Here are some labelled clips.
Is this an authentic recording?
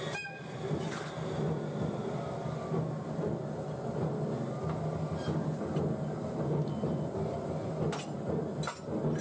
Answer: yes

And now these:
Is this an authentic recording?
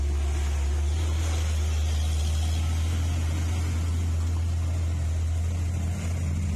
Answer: yes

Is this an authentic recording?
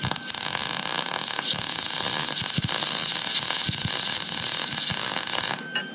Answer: yes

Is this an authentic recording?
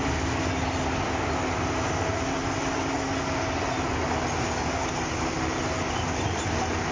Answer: yes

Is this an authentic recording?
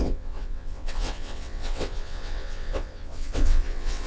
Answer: no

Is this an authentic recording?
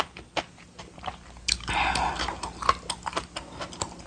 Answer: yes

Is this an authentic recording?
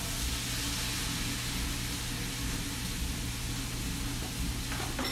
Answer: yes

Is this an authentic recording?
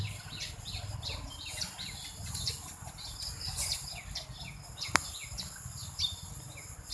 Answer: yes